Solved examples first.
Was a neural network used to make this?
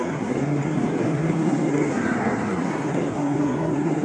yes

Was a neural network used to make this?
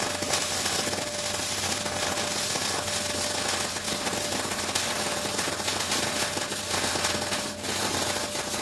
no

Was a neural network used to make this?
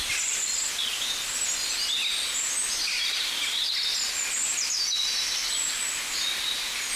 no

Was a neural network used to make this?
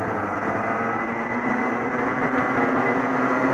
no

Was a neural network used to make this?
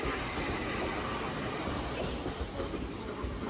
no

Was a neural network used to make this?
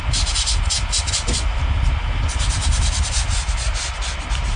no